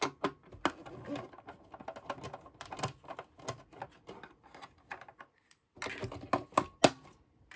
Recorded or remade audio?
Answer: recorded